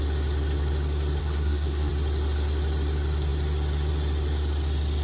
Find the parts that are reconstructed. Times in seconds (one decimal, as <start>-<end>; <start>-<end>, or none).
1.2-1.9